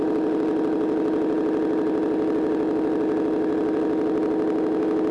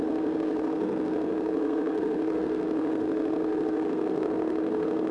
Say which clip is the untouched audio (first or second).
first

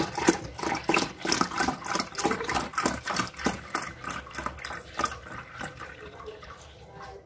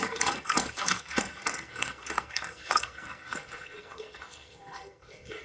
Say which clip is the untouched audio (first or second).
first